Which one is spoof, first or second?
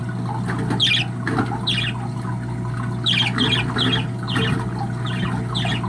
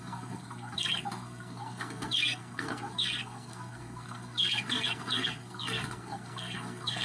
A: second